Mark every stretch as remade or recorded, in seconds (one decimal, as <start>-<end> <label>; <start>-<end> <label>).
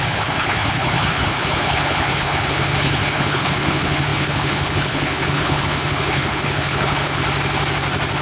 0.0-7.2 remade; 7.2-8.2 recorded